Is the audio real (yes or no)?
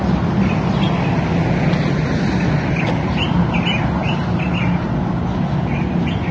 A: yes